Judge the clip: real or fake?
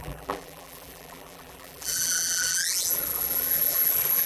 fake